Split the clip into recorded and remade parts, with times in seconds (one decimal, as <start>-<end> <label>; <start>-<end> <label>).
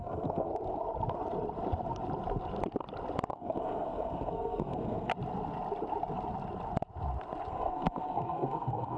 0.0-0.5 remade; 0.5-3.3 recorded; 3.3-5.1 remade; 5.1-7.5 recorded; 7.5-9.0 remade